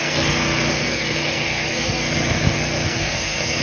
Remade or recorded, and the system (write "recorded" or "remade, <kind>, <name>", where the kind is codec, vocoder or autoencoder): remade, codec, SNAC